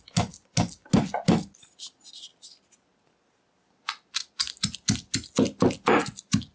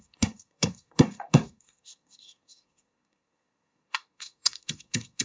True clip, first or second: first